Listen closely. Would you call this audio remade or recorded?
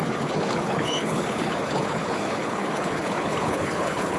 remade